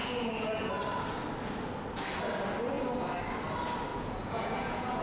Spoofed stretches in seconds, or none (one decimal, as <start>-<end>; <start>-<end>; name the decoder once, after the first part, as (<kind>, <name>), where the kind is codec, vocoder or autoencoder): 0.0-0.7 (vocoder, Vocos); 3.9-5.0